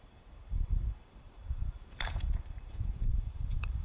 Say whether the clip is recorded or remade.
remade